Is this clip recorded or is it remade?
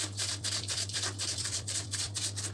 remade